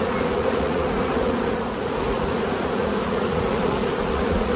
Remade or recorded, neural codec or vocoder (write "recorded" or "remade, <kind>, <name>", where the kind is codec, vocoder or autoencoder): remade, vocoder, Vocos